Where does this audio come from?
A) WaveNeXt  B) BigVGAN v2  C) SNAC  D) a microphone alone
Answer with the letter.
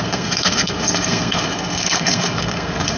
C